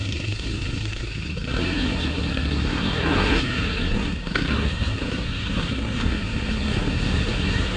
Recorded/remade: remade